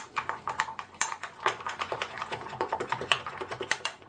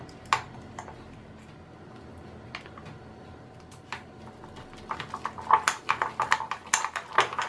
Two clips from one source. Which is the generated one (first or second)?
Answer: first